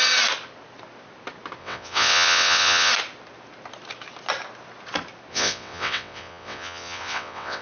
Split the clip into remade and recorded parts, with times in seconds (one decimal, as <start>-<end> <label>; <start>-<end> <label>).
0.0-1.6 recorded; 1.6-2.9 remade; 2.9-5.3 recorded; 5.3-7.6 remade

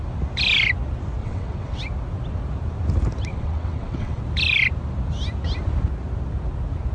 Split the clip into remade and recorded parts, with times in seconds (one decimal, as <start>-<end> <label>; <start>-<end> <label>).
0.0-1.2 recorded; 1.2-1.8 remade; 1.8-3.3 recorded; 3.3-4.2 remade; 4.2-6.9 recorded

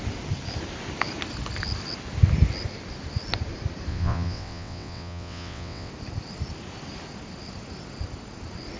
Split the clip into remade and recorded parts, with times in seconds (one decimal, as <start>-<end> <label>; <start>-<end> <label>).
0.0-3.9 recorded; 3.9-5.9 remade; 5.9-8.8 recorded